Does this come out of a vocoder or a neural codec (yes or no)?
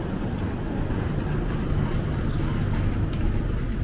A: no